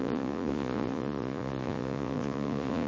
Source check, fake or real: fake